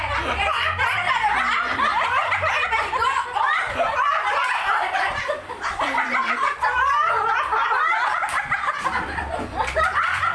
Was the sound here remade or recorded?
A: remade